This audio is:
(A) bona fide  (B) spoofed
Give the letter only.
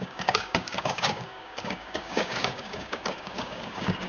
B